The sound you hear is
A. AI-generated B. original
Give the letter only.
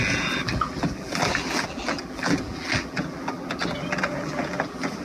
A